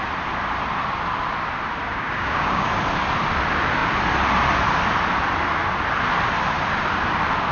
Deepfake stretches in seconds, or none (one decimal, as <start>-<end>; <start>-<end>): 1.9-2.7